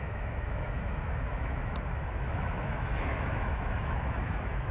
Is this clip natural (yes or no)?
no